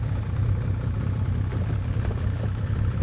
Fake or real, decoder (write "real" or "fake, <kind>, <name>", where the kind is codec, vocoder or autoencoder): real